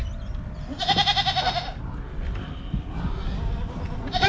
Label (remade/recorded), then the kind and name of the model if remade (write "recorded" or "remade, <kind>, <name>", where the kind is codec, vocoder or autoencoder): recorded